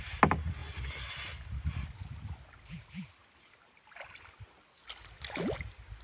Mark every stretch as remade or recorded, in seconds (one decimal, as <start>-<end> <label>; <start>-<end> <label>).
0.0-6.0 recorded